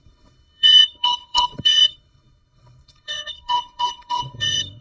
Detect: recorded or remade remade